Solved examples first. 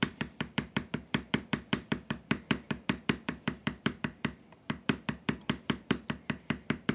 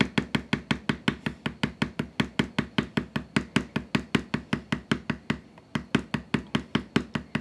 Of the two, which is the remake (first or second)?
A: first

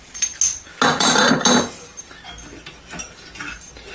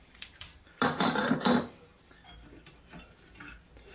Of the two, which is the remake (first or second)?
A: second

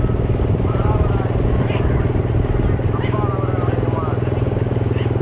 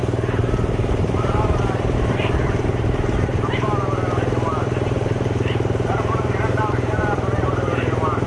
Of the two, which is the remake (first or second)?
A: second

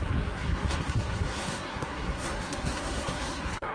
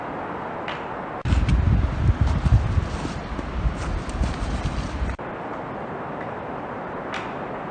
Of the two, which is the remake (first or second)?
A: first